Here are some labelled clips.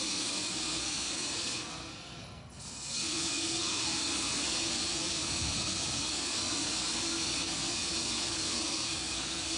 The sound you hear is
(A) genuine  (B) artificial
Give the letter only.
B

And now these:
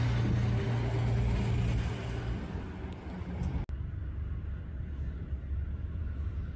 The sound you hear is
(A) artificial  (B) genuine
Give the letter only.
B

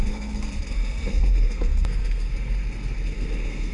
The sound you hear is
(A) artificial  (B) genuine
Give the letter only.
A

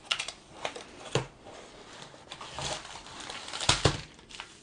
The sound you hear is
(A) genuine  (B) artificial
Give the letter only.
B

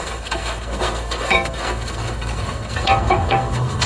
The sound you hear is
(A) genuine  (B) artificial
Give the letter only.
B